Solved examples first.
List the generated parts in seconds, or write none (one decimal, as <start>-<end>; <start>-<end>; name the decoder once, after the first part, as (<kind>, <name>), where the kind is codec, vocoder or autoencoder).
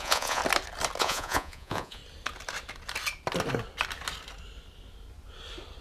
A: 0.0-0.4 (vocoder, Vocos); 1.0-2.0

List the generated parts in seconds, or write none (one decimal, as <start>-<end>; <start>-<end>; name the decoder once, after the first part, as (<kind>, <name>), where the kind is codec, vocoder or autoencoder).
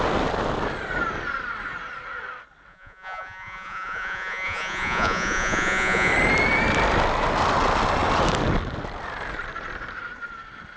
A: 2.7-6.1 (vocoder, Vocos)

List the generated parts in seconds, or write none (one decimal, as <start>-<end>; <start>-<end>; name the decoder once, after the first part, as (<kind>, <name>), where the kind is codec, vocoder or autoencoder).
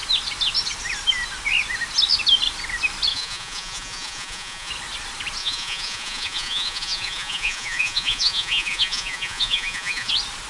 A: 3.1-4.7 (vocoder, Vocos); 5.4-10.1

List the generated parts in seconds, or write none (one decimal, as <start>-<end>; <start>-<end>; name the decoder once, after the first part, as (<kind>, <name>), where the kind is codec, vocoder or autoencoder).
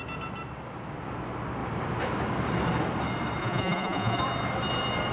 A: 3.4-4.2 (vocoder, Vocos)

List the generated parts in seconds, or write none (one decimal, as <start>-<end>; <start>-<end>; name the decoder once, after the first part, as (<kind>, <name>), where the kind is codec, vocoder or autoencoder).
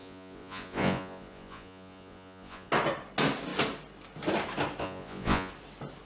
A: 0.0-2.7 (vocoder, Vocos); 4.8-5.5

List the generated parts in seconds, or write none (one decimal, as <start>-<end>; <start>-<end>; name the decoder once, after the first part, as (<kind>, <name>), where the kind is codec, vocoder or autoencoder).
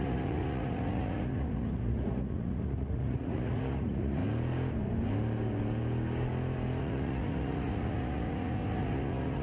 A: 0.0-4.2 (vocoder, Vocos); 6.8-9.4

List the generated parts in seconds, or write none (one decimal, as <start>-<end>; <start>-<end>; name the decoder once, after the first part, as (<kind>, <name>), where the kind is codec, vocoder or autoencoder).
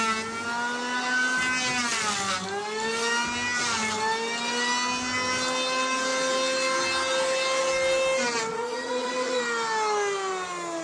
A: 8.5-9.4 (vocoder, Vocos)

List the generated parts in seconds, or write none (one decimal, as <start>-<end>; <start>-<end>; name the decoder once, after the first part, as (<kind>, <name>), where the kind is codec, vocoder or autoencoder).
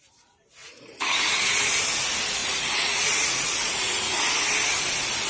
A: 0.6-1.8 (vocoder, Vocos); 2.4-4.2